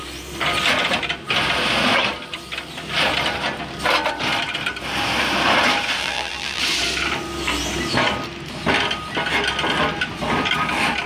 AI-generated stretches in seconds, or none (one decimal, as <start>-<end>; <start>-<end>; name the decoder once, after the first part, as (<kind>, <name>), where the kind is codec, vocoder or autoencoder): 6.0-6.6 (vocoder, BigVGAN v2)